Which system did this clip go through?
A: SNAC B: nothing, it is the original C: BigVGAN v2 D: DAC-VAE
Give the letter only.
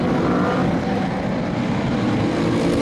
B